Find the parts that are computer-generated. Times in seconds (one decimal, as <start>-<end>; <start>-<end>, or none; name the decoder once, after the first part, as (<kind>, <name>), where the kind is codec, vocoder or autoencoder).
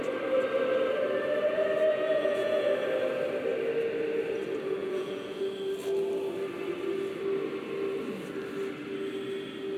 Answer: 1.9-2.7 (vocoder, Vocos); 4.8-5.4